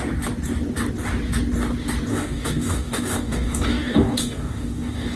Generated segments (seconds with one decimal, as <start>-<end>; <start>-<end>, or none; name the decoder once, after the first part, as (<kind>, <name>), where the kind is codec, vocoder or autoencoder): 2.1-5.2 (codec, DAC)